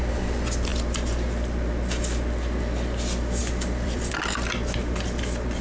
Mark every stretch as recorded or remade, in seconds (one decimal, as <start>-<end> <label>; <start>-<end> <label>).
0.0-3.4 recorded; 3.4-4.1 remade; 4.1-5.6 recorded